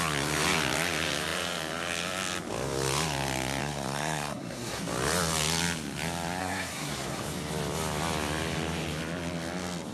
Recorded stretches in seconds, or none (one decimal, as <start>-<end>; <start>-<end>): 0.0-3.6; 4.8-6.4; 7.2-9.9